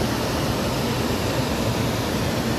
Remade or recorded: recorded